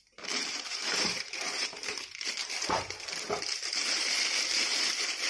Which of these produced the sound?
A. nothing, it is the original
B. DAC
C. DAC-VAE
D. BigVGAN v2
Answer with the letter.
D